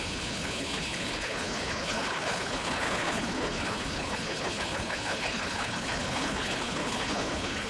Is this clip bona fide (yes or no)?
no